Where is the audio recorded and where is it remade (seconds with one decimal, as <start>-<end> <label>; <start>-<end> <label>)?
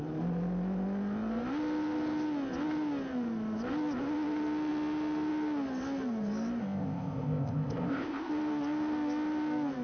0.0-6.6 recorded; 6.6-8.3 remade; 8.3-9.8 recorded